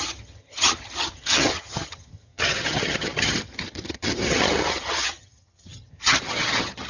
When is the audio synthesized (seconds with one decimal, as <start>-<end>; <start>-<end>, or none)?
0.0-6.9